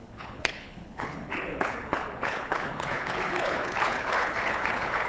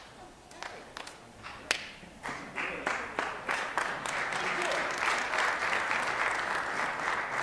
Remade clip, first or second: first